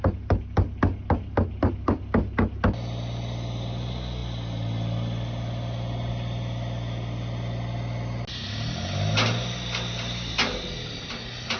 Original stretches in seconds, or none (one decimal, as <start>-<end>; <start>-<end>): 0.0-11.6